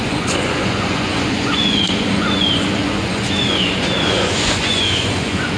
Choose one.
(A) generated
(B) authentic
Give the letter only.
A